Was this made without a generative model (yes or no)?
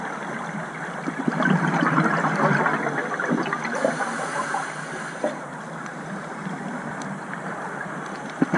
yes